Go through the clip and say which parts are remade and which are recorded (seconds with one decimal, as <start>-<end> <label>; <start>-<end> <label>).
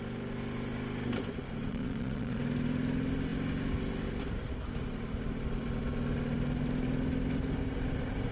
0.0-1.7 recorded; 1.7-2.4 remade; 2.4-8.3 recorded